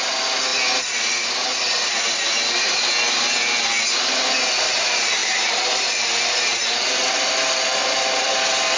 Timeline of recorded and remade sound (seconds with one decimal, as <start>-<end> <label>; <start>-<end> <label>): 0.0-5.2 recorded; 5.2-6.0 remade; 6.0-7.8 recorded; 7.8-8.3 remade; 8.3-8.8 recorded